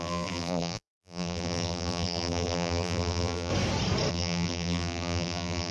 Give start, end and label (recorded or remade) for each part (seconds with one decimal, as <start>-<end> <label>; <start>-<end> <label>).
0.0-3.5 remade; 3.5-4.1 recorded; 4.1-5.7 remade